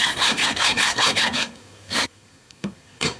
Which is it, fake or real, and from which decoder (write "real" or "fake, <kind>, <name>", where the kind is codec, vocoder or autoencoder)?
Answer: fake, codec, SNAC